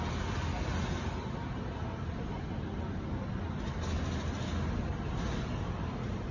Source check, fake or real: real